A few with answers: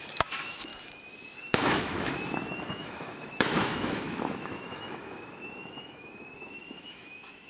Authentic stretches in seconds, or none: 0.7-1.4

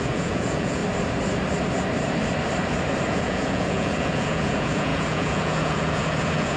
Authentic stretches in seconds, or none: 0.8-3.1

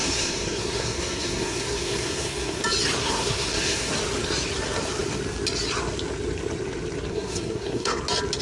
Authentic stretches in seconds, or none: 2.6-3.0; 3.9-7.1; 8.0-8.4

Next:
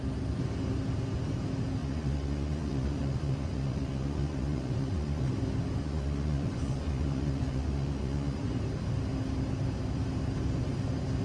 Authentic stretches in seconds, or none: 0.0-1.8; 5.3-5.8; 8.5-11.2

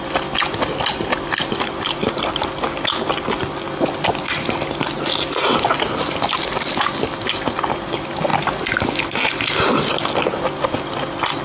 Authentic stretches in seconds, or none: 0.0-11.4

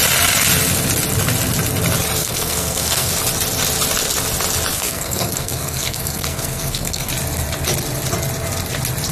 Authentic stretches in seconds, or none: 0.0-2.2; 3.1-4.7; 7.1-9.1